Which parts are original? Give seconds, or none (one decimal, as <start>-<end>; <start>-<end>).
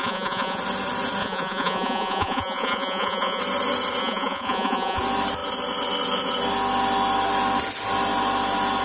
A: 0.6-1.2; 3.4-4.0; 5.0-8.8